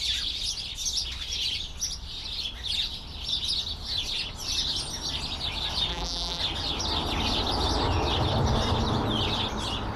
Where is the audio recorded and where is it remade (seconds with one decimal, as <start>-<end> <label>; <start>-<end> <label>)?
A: 0.0-5.9 recorded; 5.9-6.4 remade; 6.4-10.0 recorded